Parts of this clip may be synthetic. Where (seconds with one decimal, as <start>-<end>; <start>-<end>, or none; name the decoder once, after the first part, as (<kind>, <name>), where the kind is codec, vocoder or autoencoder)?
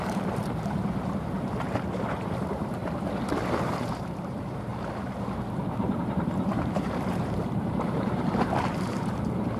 0.0-2.8 (vocoder, BigVGAN v2); 3.5-4.7; 6.0-9.6